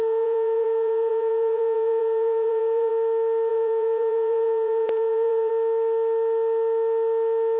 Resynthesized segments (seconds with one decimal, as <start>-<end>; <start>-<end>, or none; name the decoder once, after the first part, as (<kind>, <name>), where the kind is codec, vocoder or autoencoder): 0.0-2.9 (vocoder, Vocos); 3.5-5.5